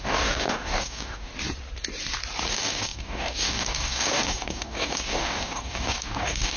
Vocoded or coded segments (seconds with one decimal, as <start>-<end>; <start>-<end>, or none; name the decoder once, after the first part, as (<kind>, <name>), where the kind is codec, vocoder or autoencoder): 0.0-1.3 (codec, DAC); 2.5-6.6